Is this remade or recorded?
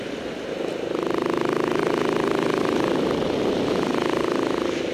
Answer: recorded